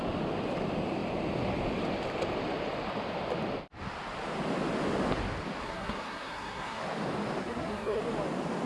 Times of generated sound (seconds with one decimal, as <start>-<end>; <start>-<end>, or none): 5.6-6.8; 7.4-8.0